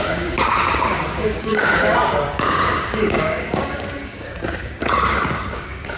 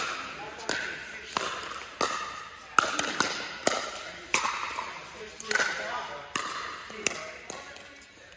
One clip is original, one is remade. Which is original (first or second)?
second